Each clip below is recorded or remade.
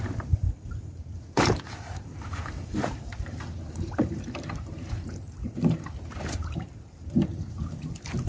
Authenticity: remade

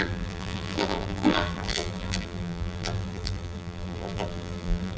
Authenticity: remade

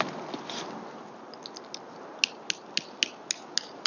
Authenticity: recorded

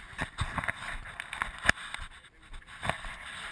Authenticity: recorded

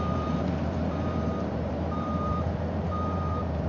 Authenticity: remade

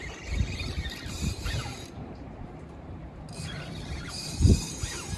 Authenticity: remade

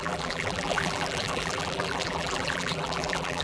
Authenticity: remade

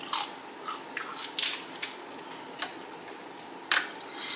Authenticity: remade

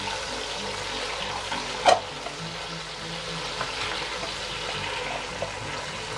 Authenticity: recorded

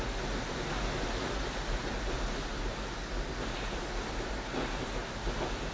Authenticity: recorded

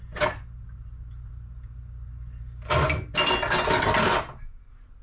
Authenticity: recorded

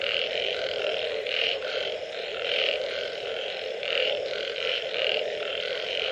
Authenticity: remade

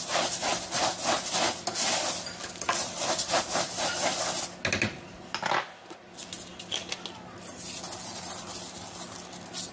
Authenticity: recorded